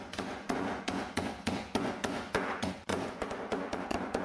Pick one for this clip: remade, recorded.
remade